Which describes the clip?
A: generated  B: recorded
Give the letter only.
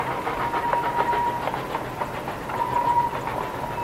B